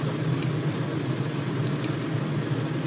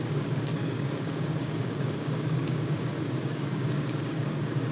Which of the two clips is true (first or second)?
first